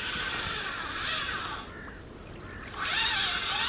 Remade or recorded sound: recorded